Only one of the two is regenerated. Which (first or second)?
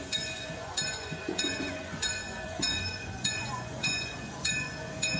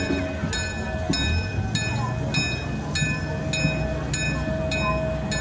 first